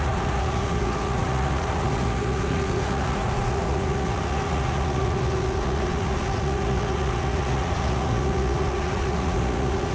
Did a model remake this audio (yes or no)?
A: yes